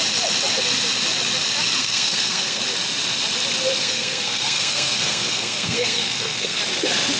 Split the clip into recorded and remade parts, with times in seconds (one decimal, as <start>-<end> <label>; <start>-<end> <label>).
0.0-1.8 recorded; 1.8-2.6 remade; 2.6-3.8 recorded; 3.8-6.6 remade; 6.6-7.2 recorded